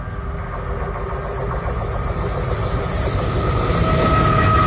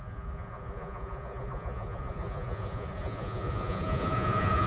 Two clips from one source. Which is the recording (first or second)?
first